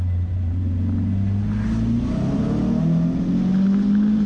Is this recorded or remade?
recorded